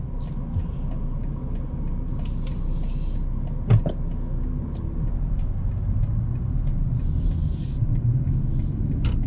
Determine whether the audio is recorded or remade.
recorded